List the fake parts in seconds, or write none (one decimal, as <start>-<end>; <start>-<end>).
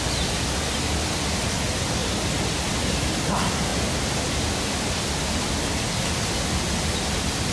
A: none